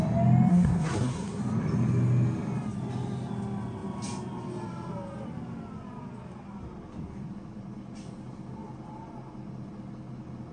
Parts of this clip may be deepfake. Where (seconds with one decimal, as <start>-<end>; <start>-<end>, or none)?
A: 0.5-1.4